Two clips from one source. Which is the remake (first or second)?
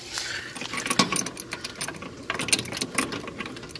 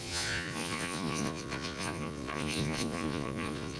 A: second